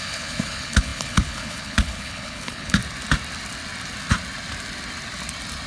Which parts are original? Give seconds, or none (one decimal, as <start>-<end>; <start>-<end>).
2.8-5.7